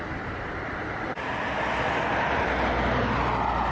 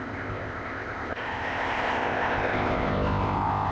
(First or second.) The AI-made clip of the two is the second